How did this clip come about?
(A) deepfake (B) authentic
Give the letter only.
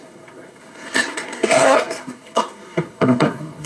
A